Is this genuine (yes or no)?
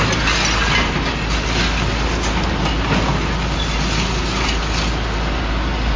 yes